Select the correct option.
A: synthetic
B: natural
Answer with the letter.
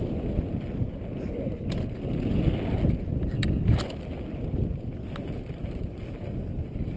B